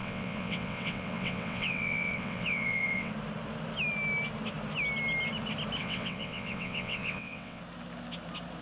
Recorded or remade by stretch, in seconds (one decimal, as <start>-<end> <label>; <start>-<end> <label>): 0.0-3.1 remade; 3.1-5.8 recorded; 5.8-7.6 remade; 7.6-8.6 recorded